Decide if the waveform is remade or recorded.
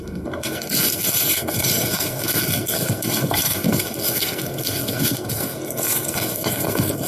remade